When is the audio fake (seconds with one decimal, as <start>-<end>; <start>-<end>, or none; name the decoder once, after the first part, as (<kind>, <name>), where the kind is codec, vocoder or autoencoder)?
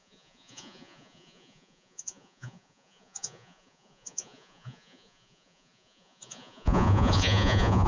0.0-7.9 (vocoder, Vocos)